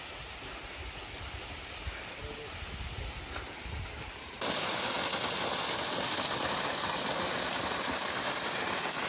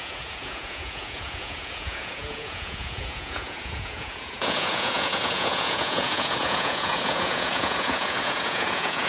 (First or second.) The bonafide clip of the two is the first